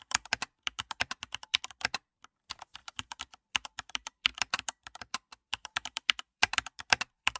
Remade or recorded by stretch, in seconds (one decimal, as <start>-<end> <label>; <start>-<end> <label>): 0.0-0.4 recorded; 0.4-1.6 remade; 1.6-2.8 recorded; 2.8-4.4 remade; 4.4-5.4 recorded; 5.4-7.4 remade